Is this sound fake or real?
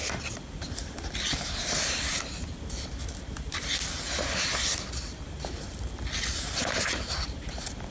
real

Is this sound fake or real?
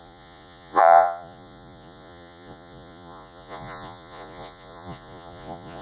fake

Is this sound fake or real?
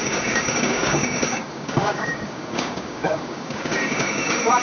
fake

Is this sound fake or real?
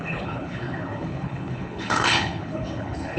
fake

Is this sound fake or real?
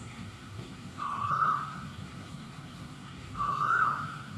fake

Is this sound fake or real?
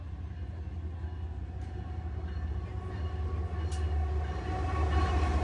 real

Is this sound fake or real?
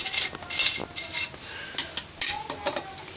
real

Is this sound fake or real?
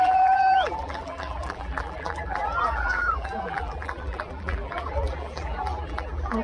fake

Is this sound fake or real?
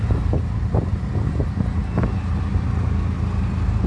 real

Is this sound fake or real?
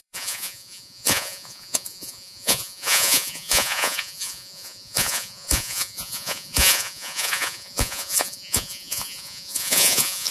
fake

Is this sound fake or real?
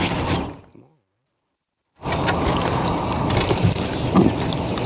real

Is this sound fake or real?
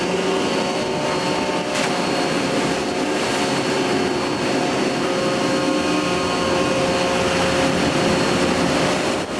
real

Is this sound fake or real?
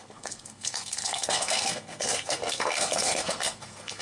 fake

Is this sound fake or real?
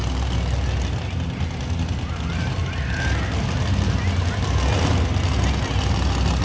real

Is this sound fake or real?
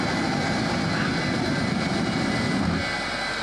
real